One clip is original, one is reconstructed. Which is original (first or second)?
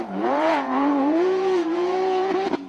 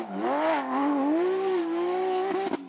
second